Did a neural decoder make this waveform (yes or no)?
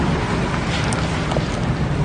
no